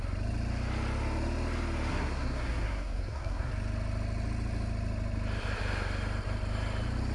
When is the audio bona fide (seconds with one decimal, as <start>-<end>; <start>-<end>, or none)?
0.0-1.9; 3.5-7.1